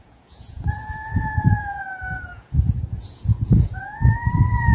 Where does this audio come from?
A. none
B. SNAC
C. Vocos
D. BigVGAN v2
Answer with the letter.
C